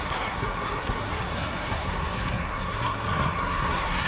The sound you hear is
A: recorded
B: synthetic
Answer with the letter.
B